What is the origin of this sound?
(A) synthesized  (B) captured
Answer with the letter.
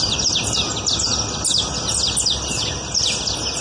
B